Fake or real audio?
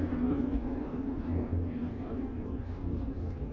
fake